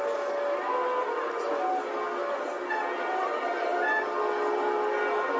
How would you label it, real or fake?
real